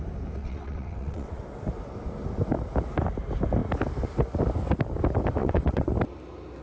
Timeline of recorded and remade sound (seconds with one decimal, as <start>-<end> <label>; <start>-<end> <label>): 0.0-0.4 recorded; 0.4-1.4 remade; 1.4-5.4 recorded; 5.4-5.9 remade; 5.9-6.6 recorded